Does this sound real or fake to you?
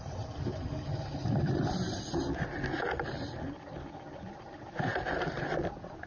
real